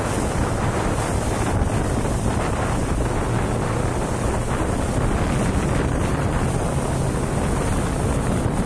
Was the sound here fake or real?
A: real